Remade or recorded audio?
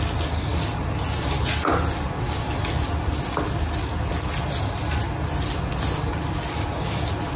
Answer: recorded